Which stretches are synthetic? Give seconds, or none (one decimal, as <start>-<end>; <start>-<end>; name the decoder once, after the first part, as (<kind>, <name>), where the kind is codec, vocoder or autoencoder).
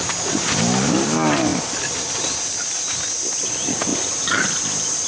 none